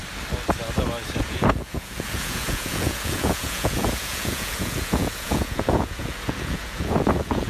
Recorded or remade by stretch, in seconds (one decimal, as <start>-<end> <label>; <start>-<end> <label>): 0.0-1.2 recorded; 1.2-7.5 remade

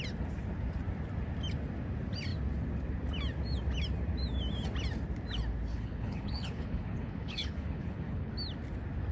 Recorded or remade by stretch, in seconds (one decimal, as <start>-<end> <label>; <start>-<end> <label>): 0.0-5.7 recorded; 5.7-8.3 remade; 8.3-9.1 recorded

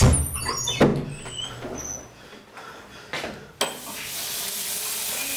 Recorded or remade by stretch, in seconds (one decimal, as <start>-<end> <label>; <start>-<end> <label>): 0.0-5.4 recorded

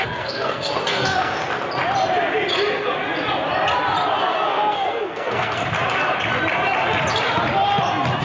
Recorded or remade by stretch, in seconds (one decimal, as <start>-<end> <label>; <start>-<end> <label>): 0.0-1.4 remade; 1.4-4.2 recorded; 4.2-5.6 remade; 5.6-8.2 recorded

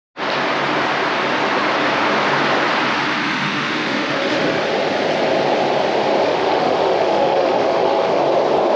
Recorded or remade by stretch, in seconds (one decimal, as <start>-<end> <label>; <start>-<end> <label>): 0.0-3.2 recorded; 3.2-4.6 remade; 4.6-6.2 recorded; 6.2-8.2 remade; 8.2-8.8 recorded